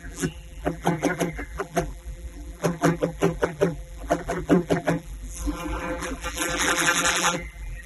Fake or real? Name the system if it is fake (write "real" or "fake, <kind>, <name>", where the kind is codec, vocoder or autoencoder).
fake, vocoder, BigVGAN v2